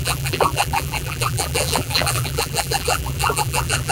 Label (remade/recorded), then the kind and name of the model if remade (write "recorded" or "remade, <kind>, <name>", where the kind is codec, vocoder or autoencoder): remade, vocoder, BigVGAN v2